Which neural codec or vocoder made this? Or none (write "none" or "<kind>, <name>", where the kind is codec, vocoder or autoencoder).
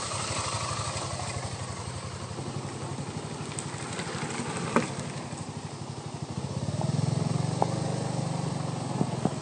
none